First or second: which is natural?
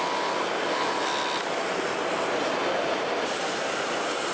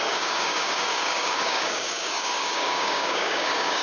first